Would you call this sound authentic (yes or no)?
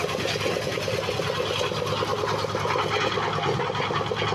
yes